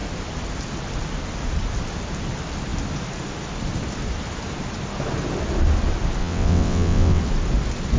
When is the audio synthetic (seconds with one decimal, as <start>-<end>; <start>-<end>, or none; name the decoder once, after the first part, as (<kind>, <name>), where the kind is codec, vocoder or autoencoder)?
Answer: 6.2-7.2 (vocoder, WaveNeXt)